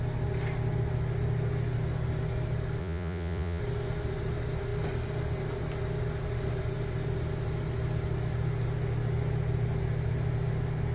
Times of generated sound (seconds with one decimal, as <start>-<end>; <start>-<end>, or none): 2.8-3.6